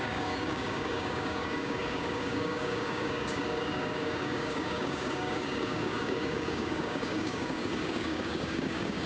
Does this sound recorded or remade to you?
remade